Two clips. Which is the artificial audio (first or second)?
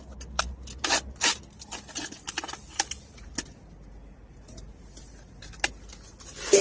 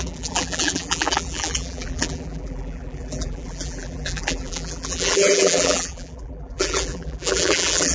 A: second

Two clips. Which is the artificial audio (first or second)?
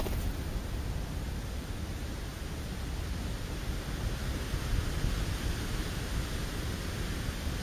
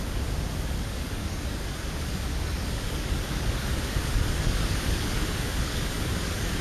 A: second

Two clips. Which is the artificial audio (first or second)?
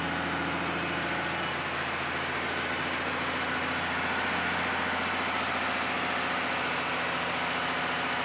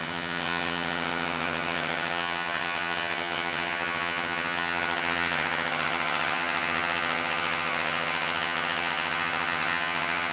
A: second